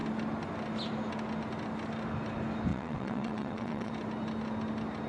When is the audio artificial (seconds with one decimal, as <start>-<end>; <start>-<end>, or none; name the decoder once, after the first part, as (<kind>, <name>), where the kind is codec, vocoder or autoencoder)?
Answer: 2.7-3.9 (vocoder, WaveNeXt)

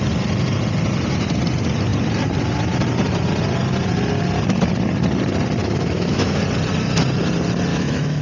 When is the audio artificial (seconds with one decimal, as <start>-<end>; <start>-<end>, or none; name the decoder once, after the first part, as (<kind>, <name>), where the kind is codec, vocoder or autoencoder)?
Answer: 5.6-6.4 (autoencoder, DAC-VAE); 7.7-8.2

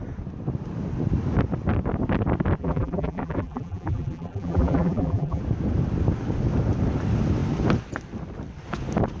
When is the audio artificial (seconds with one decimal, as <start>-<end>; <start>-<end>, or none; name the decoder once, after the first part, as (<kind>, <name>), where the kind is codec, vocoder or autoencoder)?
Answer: 2.6-5.4 (vocoder, BigVGAN v2)

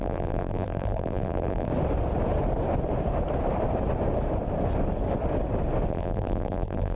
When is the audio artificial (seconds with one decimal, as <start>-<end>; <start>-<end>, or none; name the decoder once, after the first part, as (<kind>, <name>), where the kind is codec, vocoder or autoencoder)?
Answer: 0.0-1.7 (vocoder, BigVGAN v2); 5.9-7.0

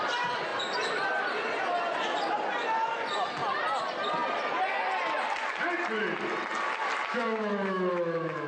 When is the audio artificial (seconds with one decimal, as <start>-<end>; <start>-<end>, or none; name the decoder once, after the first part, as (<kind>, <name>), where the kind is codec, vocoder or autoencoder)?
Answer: 7.1-8.5 (autoencoder, DAC-VAE)

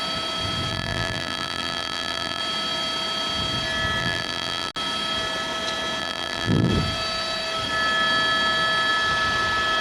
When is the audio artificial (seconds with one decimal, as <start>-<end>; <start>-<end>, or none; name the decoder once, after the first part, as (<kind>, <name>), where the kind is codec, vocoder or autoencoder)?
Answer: 0.7-2.4 (vocoder, BigVGAN v2); 4.0-4.7; 6.0-6.7

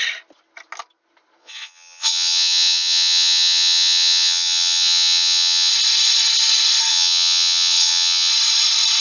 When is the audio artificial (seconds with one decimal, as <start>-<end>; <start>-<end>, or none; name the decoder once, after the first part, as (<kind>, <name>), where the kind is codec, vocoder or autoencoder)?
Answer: 1.4-5.7 (vocoder, WaveNeXt); 6.9-8.3

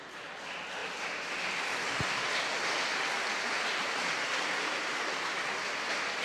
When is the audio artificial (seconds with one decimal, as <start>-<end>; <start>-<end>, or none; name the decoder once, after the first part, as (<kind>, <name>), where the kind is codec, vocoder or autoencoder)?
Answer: 0.8-1.6 (vocoder, BigVGAN v2)